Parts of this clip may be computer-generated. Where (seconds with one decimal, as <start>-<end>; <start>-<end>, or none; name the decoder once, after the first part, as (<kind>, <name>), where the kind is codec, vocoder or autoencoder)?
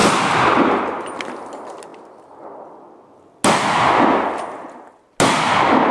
none